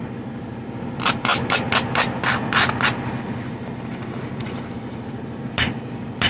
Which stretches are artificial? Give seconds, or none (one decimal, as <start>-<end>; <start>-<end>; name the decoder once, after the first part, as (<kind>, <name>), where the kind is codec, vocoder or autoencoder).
none